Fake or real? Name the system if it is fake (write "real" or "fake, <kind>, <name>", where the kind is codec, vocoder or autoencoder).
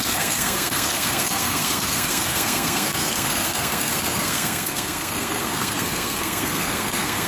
fake, codec, SNAC